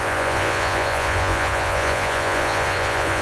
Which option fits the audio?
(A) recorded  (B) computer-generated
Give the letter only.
B